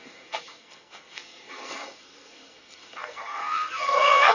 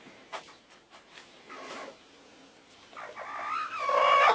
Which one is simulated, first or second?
first